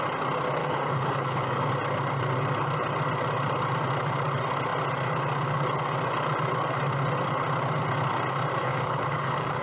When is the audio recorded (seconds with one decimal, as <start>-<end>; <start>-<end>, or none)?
0.0-0.6; 1.7-8.6